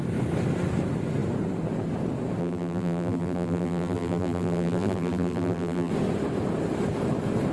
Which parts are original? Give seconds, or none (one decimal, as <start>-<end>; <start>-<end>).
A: 0.0-2.4; 5.9-7.5